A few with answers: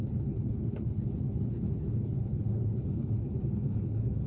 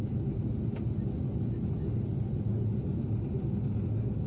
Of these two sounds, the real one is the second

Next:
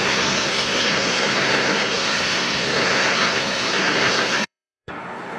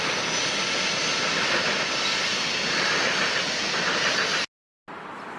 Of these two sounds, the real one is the second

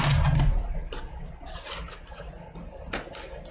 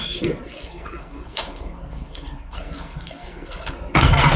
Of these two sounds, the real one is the first